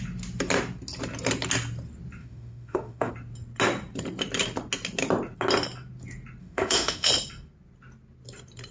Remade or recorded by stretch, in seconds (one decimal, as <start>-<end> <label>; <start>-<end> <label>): 0.0-2.2 recorded; 2.2-3.1 remade; 3.1-6.4 recorded; 6.4-7.1 remade; 7.1-8.7 recorded

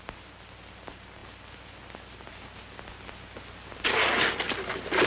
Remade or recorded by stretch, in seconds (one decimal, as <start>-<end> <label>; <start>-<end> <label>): 0.0-5.1 recorded

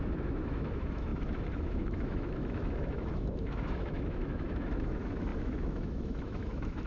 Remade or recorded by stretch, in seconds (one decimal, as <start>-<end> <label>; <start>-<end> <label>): 0.0-6.9 remade

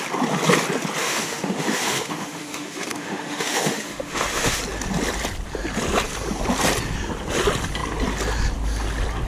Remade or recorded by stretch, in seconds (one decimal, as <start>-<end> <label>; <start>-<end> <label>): 0.0-1.0 recorded; 1.0-4.6 remade; 4.6-9.3 recorded